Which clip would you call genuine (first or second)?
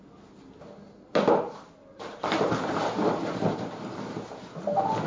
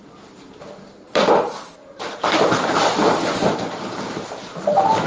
first